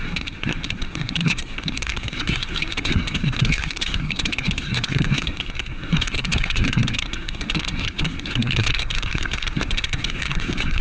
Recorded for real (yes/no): no